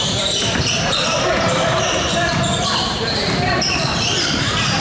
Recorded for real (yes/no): no